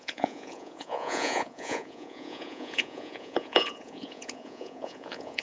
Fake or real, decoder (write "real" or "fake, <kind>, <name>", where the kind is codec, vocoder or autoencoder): fake, vocoder, Vocos